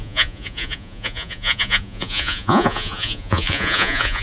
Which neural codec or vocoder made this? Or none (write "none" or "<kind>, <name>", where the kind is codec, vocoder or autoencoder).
vocoder, Vocos